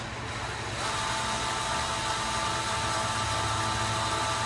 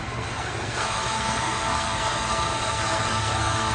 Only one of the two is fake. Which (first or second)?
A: second